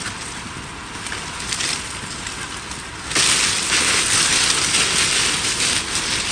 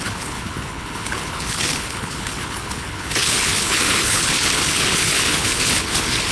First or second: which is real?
first